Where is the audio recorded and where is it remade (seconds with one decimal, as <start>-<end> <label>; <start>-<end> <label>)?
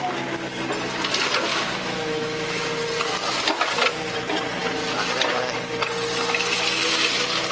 0.0-1.5 recorded; 1.5-2.7 remade; 2.7-7.5 recorded